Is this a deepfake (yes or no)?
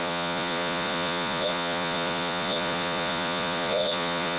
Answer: yes